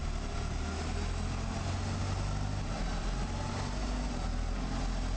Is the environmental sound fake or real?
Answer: real